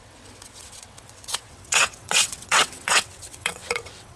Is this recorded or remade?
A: remade